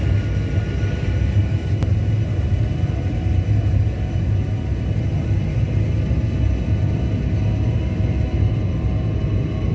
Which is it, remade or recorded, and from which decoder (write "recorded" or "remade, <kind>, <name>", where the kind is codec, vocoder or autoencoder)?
recorded